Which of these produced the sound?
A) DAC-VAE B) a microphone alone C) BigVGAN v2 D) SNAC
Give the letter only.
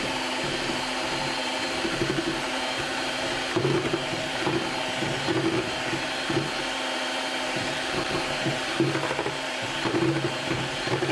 C